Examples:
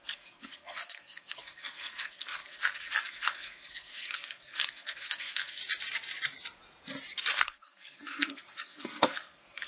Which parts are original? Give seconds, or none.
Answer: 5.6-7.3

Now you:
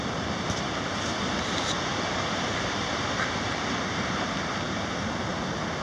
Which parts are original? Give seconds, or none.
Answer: 0.0-1.9; 4.2-5.8